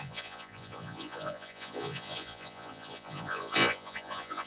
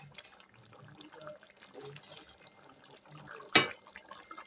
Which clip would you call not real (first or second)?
first